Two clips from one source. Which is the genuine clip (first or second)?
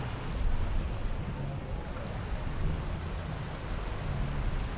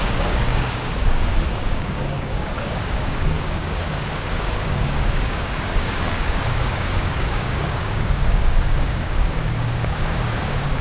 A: first